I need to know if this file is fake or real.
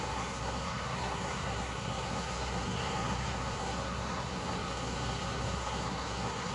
fake